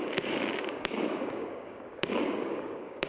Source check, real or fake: fake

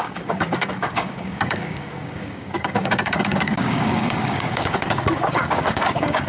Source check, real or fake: fake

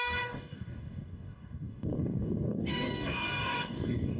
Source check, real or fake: fake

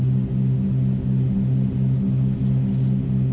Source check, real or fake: real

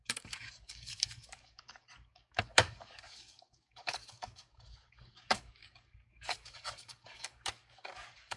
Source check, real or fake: fake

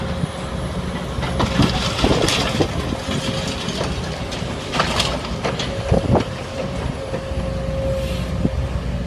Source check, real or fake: real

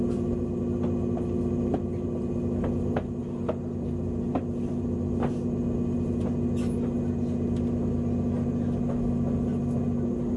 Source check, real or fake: real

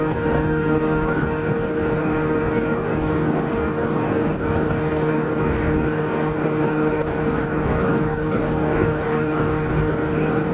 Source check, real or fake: fake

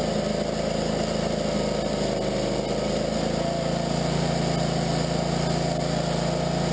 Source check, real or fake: real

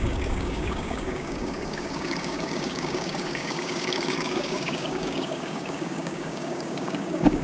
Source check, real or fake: fake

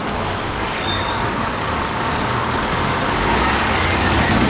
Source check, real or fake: fake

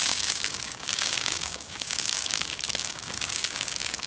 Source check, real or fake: fake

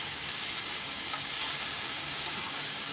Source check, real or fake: fake